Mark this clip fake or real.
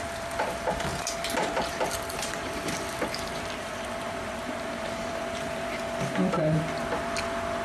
fake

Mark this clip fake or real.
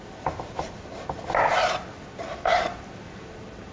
real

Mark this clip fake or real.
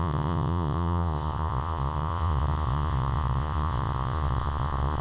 fake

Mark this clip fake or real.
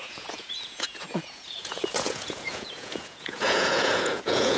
fake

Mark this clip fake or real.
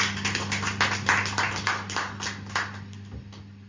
real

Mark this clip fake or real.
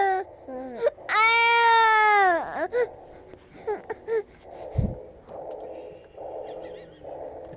real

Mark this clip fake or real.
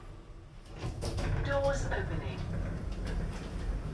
fake